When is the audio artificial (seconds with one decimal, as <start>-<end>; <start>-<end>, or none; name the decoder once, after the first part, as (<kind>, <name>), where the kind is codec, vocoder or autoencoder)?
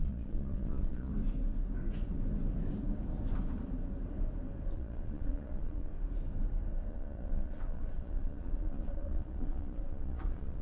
0.0-1.1 (vocoder, Vocos); 4.7-5.9; 6.9-10.6